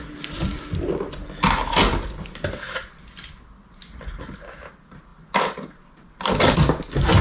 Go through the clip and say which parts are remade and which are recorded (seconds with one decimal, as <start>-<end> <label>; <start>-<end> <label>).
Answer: 0.0-7.2 recorded